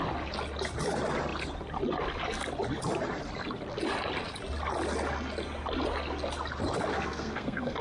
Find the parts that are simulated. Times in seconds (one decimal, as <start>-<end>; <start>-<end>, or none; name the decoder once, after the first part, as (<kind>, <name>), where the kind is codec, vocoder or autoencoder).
6.9-7.8 (codec, SNAC)